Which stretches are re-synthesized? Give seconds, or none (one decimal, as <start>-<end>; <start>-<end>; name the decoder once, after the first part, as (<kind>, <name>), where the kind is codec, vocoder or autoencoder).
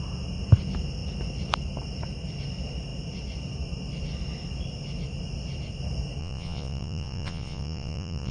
6.2-8.3 (vocoder, Vocos)